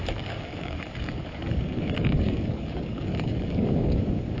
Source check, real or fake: fake